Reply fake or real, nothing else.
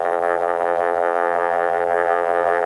fake